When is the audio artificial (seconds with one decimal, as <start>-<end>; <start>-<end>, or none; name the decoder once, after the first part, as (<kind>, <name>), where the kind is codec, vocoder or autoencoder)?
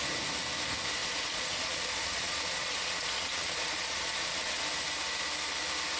1.0-4.6 (vocoder, Vocos)